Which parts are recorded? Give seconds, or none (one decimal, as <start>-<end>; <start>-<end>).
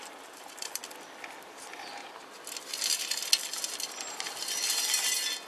0.8-1.4; 2.0-5.5